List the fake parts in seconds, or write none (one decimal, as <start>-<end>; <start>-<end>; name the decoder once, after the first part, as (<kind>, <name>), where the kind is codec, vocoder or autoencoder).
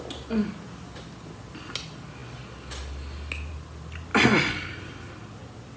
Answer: none